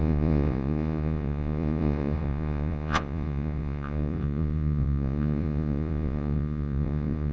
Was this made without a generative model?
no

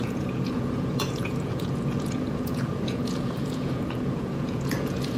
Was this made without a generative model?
no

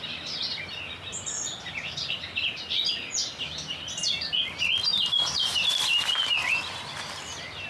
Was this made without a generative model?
yes